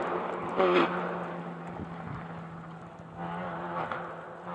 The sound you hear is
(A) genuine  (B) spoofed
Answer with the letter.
A